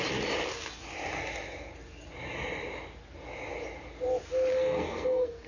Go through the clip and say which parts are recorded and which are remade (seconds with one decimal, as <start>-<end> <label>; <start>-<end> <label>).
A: 0.0-4.5 recorded; 4.5-5.5 remade